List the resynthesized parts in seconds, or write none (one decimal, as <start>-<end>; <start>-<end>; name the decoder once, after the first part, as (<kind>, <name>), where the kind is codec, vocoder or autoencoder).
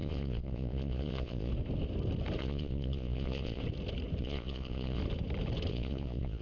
0.0-1.5 (vocoder, Vocos); 2.4-3.6; 4.2-5.0; 5.7-6.4